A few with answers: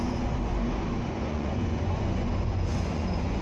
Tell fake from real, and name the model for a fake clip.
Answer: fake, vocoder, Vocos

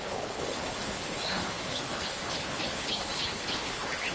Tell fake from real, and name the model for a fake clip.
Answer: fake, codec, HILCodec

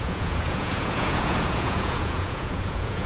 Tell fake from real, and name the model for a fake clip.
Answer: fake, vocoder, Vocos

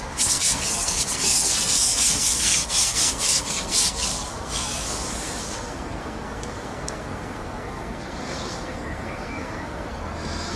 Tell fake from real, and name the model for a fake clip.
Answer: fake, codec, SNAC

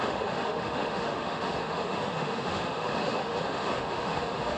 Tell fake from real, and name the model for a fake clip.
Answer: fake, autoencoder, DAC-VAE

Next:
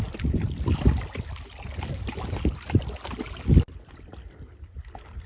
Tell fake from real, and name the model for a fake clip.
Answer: real